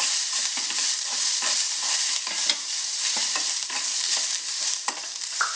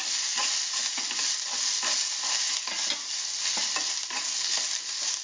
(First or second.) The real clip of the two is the second